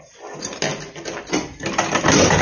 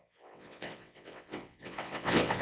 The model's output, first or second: second